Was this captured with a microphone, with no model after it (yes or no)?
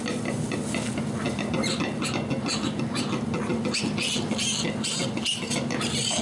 yes